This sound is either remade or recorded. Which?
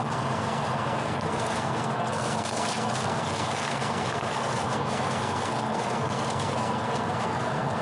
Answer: remade